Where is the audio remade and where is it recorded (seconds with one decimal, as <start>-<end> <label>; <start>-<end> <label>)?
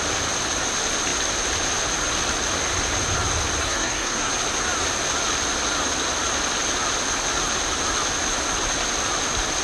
0.0-3.6 recorded; 3.6-4.3 remade; 4.3-9.6 recorded